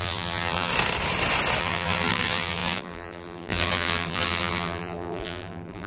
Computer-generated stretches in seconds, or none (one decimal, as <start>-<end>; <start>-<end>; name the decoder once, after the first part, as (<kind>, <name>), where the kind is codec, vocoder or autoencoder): 0.0-0.7 (vocoder, BigVGAN v2); 1.6-5.9